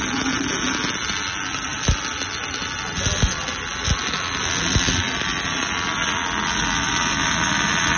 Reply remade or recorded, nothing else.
recorded